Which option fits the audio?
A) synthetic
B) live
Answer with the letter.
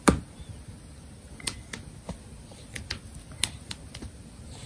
B